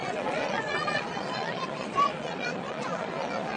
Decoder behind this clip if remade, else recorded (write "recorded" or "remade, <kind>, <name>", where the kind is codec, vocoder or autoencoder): remade, vocoder, Vocos